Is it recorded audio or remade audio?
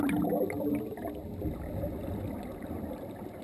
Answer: recorded